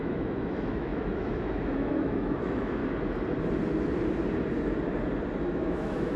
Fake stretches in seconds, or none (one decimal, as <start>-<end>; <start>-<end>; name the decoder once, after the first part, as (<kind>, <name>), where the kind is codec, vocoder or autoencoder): 0.0-2.8 (autoencoder, DAC-VAE); 5.4-6.2